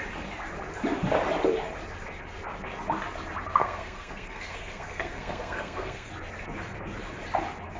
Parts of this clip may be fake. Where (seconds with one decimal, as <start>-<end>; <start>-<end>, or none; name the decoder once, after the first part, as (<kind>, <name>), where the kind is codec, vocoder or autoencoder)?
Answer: 3.6-6.1 (codec, SNAC)